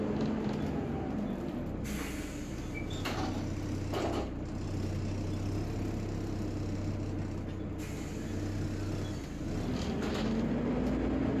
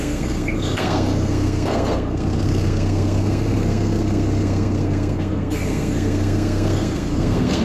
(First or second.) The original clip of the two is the first